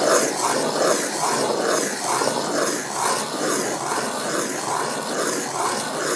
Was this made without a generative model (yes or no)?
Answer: yes